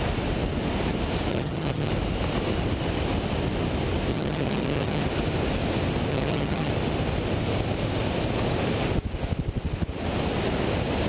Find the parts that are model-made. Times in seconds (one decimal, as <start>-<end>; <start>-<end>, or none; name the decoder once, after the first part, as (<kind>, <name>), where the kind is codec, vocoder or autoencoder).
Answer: 1.3-1.9 (vocoder, HiFi-GAN); 4.1-5.0; 6.1-6.7